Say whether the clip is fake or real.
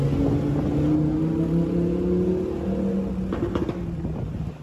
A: real